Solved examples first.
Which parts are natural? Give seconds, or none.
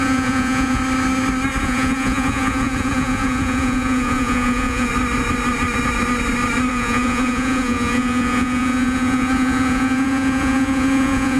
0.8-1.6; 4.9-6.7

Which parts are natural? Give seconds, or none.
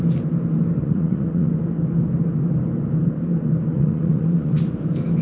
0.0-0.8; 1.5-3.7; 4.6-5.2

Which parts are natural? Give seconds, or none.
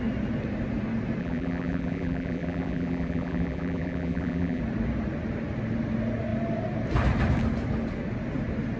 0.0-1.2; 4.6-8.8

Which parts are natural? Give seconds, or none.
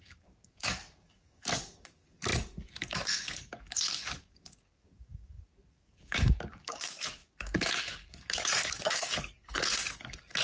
none